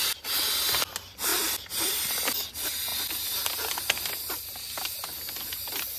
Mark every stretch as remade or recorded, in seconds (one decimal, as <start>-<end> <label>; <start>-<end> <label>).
0.0-6.0 recorded